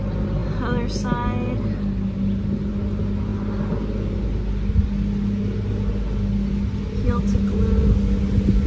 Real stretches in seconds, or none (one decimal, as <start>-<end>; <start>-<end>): 0.0-8.7